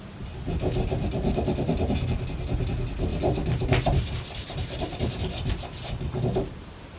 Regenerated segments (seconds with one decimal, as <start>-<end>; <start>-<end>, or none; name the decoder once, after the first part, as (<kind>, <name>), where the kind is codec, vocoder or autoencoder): 3.1-5.1 (vocoder, BigVGAN v2)

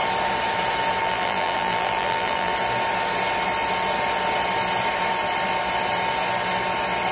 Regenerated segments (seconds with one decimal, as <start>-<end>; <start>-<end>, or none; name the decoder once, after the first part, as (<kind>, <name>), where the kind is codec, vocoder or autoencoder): 1.0-2.5 (vocoder, BigVGAN v2)